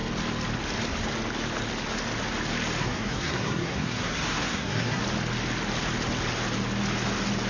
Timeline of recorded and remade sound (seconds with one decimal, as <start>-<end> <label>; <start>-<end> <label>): 0.0-2.8 recorded; 2.8-5.0 remade; 5.0-7.5 recorded